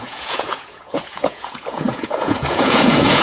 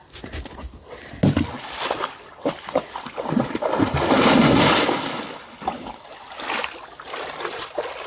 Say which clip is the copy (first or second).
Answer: first